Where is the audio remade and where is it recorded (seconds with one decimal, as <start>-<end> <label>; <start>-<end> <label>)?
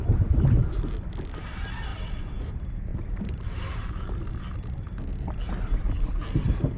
0.0-1.9 recorded; 1.9-2.5 remade; 2.5-2.9 recorded; 2.9-4.4 remade; 4.4-6.8 recorded